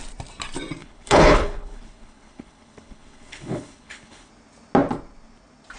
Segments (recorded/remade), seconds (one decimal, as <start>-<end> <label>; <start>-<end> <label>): 0.0-0.8 recorded; 0.8-4.3 remade; 4.3-5.8 recorded